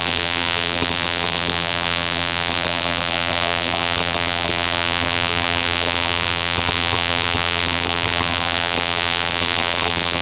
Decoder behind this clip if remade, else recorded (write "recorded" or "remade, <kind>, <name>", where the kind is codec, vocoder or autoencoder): remade, vocoder, BigVGAN v2